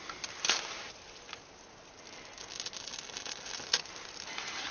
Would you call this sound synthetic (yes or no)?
no